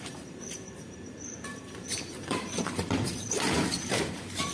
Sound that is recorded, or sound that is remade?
remade